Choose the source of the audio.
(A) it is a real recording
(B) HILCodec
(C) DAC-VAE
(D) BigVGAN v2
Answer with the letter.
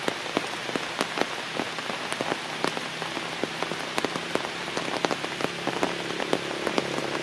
A